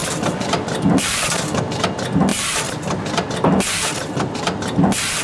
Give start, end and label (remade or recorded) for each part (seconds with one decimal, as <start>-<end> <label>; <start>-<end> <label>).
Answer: 0.0-1.6 remade; 1.6-5.2 recorded